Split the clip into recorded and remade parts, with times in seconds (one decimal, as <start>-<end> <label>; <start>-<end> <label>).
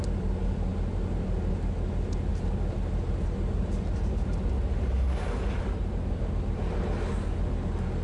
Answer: 0.0-8.0 recorded